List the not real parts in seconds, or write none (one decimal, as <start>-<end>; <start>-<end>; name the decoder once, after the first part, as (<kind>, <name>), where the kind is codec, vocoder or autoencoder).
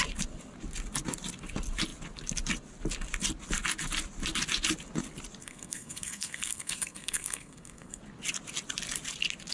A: 5.4-8.0 (codec, SNAC)